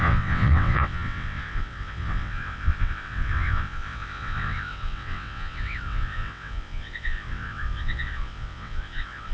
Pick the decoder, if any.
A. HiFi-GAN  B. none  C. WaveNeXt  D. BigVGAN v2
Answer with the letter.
C